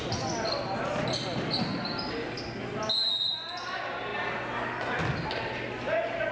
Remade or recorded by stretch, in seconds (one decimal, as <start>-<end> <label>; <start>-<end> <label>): 0.0-6.3 recorded